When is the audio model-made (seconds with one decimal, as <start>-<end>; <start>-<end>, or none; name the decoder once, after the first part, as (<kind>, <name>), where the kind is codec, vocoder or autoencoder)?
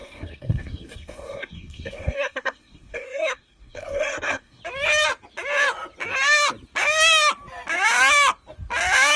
0.0-4.6 (codec, SNAC)